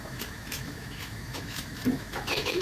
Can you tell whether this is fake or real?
fake